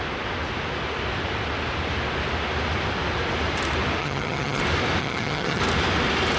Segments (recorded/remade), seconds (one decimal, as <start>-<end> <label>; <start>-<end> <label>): 0.0-4.0 recorded; 4.0-4.6 remade; 4.6-5.0 recorded; 5.0-5.6 remade; 5.6-6.4 recorded